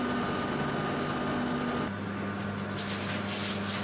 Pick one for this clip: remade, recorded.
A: recorded